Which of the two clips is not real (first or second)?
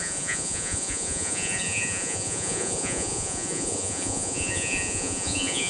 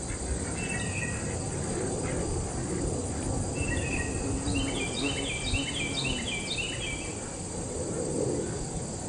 first